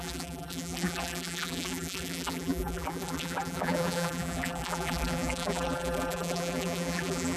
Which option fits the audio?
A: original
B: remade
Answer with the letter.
B